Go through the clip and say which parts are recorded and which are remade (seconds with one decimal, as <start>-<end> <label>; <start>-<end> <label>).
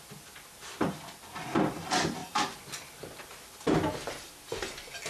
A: 0.0-2.2 recorded; 2.2-3.0 remade; 3.0-5.1 recorded